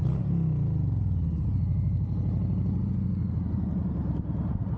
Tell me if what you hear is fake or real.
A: real